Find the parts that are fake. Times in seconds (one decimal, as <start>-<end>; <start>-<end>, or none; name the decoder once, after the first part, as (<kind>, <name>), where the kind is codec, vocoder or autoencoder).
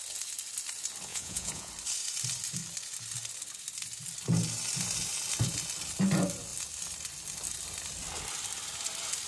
1.1-1.7 (vocoder, Vocos)